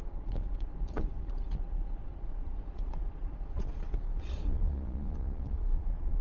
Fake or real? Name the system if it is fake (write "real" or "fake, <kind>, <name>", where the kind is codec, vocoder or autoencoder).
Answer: fake, vocoder, Vocos